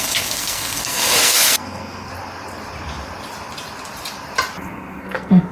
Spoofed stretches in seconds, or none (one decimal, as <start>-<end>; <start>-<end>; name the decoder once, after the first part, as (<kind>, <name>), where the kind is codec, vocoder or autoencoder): 0.0-2.1 (codec, SNAC); 4.6-5.5